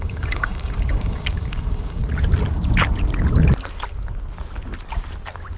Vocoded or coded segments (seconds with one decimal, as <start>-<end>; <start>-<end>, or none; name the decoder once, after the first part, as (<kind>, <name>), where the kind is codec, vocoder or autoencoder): 0.0-2.0 (codec, DAC)